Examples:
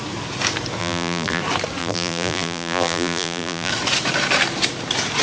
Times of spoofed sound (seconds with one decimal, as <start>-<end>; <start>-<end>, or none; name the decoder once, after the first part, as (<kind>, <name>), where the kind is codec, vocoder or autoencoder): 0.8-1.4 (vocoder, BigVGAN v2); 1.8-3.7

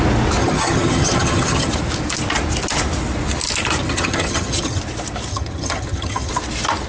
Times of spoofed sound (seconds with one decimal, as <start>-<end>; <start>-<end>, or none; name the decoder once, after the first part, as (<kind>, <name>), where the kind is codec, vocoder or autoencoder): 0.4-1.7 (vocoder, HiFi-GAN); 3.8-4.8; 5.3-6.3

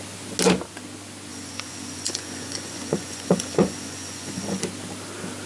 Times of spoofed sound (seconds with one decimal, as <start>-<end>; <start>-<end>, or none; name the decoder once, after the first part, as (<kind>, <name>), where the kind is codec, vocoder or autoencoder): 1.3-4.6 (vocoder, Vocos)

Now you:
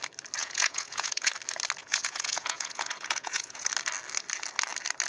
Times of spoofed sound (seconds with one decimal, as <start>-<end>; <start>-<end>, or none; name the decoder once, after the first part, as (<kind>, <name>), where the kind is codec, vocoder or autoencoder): 0.4-1.3 (vocoder, Vocos); 1.8-3.7